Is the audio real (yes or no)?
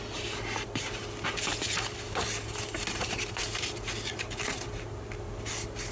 yes